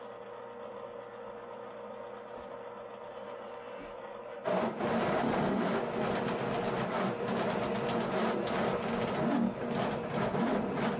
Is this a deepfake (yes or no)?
no